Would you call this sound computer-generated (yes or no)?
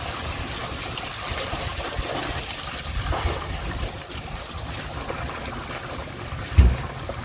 no